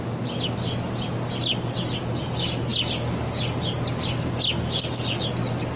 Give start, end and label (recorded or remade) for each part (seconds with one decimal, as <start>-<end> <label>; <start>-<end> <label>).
0.0-5.8 recorded